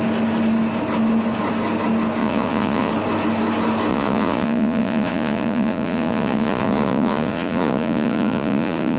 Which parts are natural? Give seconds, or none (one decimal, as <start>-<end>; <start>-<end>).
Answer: 0.0-2.2; 2.9-3.9